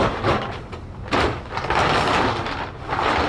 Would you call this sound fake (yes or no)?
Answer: no